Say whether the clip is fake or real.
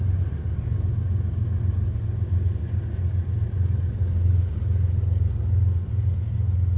real